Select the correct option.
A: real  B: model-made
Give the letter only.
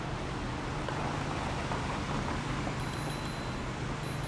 A